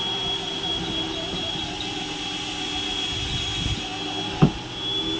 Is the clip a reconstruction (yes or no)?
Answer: no